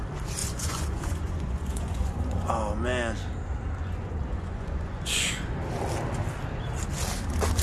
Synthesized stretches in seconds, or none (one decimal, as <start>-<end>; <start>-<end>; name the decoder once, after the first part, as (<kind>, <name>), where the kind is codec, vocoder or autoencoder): 0.4-2.5 (vocoder, Vocos); 3.8-5.6